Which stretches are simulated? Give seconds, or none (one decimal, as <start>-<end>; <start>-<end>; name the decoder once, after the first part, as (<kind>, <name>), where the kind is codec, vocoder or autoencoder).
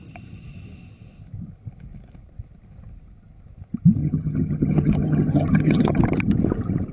4.0-6.0 (vocoder, HiFi-GAN)